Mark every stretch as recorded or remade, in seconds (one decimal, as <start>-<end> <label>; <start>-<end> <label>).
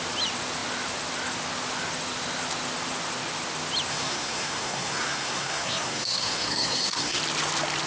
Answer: 0.0-3.9 recorded; 3.9-7.2 remade; 7.2-7.9 recorded